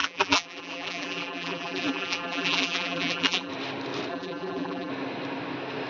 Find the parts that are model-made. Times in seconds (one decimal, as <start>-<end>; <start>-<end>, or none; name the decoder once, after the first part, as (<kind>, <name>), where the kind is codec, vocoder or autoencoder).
0.0-3.5 (vocoder, BigVGAN v2); 4.1-4.9